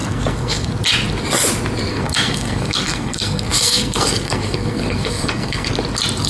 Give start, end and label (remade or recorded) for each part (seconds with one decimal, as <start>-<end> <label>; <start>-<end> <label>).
0.0-0.7 remade; 0.7-1.9 recorded; 1.9-5.7 remade; 5.7-6.3 recorded